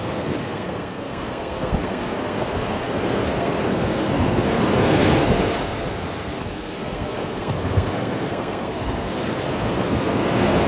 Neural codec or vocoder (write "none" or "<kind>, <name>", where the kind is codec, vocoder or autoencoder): codec, SNAC